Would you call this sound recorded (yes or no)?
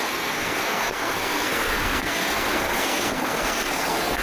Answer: no